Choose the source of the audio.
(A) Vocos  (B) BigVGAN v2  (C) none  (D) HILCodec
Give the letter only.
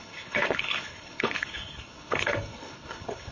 D